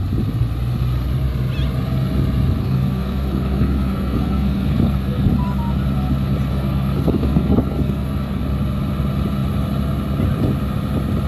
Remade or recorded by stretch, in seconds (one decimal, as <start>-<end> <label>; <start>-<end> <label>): 0.0-2.6 recorded; 2.6-5.3 remade; 5.3-6.5 recorded; 6.5-8.4 remade; 8.4-11.3 recorded